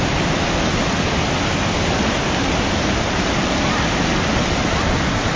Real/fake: real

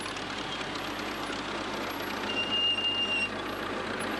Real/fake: real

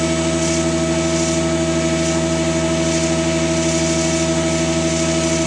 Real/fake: real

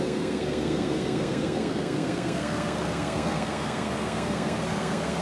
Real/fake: fake